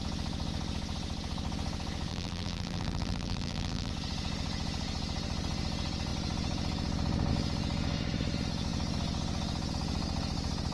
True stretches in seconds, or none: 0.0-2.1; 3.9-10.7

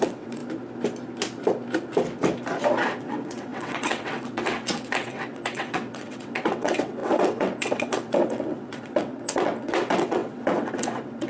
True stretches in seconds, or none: 0.4-3.0

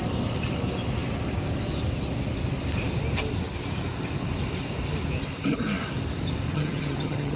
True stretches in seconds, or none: 0.0-6.5

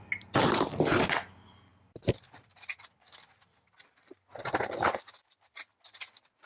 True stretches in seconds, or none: 0.0-6.5

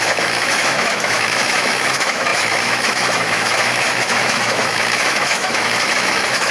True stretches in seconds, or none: none

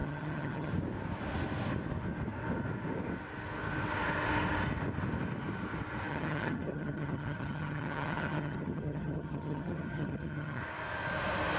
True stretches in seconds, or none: 0.7-6.1; 10.6-11.6

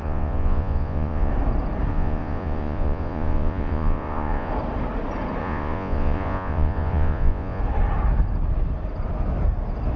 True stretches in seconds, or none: 1.3-1.9; 4.5-5.4; 7.6-10.0

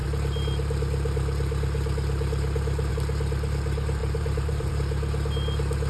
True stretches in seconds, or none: 0.0-4.0; 4.7-5.9